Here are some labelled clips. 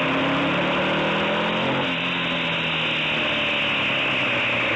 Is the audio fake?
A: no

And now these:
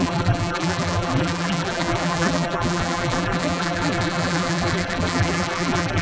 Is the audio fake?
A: yes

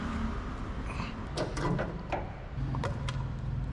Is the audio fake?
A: yes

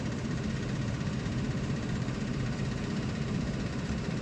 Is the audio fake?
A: yes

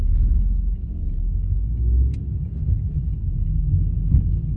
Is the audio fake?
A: no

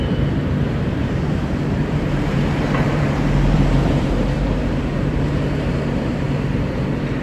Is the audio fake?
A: yes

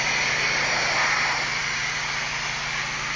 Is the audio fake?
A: no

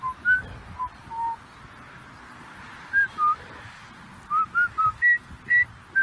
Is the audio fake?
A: no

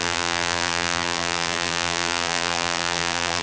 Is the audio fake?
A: yes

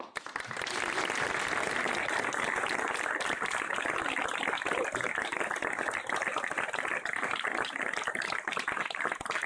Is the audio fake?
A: no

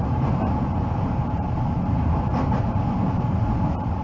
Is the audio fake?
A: yes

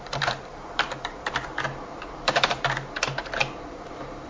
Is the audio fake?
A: yes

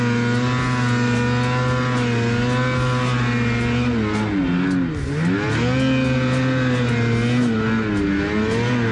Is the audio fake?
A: no